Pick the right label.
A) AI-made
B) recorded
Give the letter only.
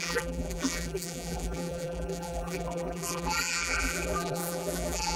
A